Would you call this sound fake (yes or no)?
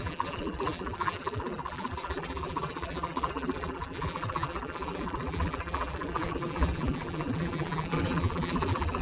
yes